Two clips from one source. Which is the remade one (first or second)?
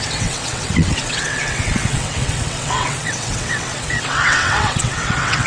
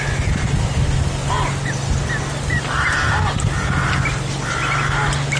first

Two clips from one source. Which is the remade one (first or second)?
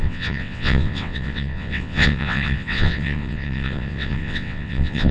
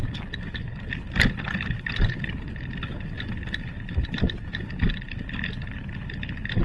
first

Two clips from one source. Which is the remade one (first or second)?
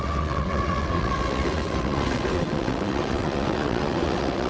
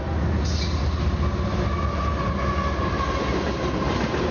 first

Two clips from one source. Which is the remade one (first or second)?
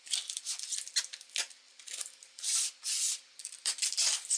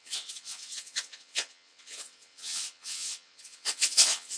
second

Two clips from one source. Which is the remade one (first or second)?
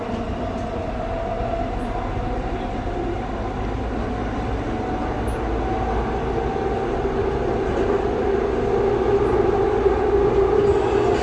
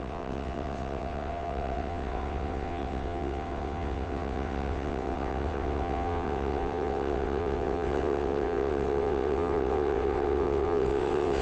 second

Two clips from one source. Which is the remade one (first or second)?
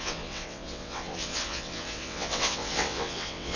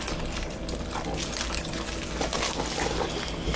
first